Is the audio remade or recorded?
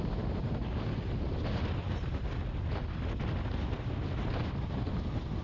recorded